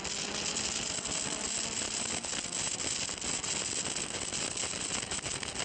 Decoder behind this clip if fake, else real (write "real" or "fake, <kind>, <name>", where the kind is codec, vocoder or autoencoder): real